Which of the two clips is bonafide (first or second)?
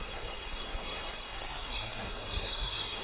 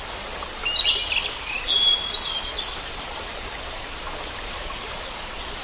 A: second